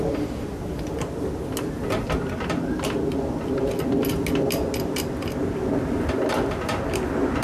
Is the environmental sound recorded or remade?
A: recorded